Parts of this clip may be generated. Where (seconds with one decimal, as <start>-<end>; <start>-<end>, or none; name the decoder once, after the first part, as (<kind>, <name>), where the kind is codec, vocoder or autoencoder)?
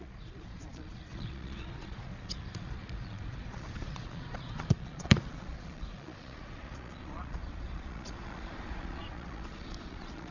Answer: 0.0-10.3 (vocoder, Vocos)